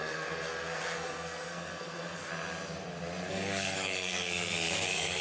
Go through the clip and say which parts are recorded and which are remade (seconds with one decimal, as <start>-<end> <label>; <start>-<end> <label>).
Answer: 0.0-2.3 remade; 2.3-3.3 recorded; 3.3-5.2 remade